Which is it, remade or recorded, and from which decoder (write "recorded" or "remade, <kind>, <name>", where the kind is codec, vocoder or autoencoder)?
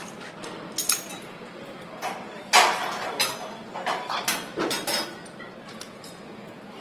recorded